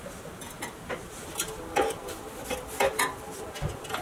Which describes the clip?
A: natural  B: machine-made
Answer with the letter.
A